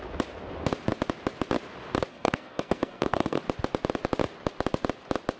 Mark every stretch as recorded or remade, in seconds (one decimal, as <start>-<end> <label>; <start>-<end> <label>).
0.0-2.1 recorded; 2.1-3.4 remade; 3.4-5.4 recorded